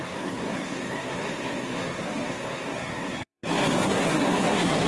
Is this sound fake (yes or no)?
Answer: yes